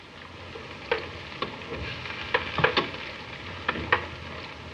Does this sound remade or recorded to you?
recorded